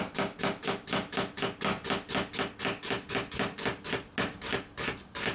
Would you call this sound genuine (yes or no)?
yes